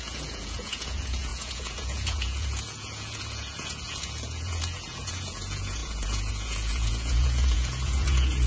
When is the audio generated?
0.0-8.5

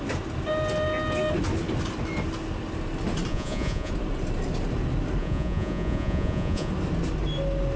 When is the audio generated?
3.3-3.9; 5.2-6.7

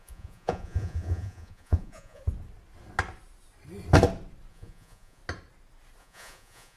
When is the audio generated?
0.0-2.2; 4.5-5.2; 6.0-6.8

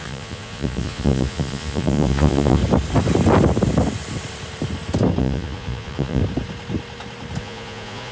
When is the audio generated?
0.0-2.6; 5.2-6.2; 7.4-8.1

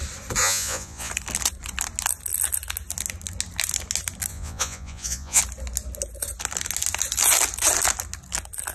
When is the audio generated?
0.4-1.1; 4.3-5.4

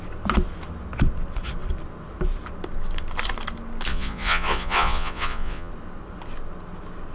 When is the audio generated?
3.9-5.7